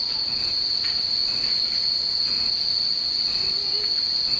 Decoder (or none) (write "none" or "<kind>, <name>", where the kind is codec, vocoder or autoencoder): none